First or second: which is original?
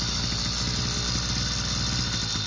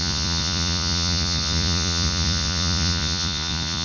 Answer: first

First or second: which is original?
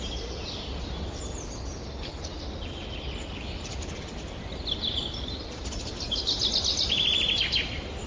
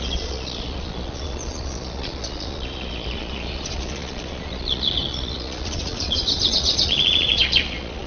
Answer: first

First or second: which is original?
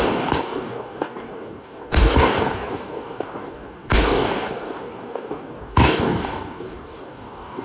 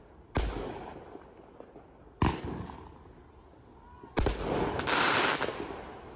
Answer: second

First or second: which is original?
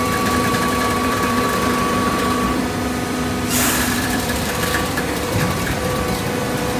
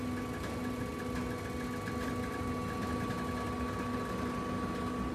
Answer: second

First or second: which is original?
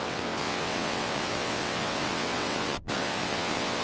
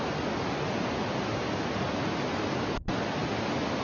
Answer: second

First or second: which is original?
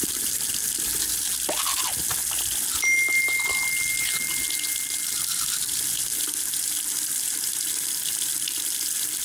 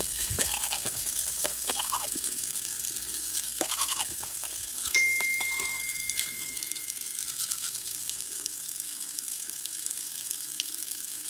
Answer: first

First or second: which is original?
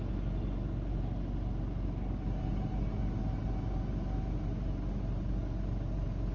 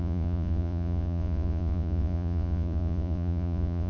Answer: first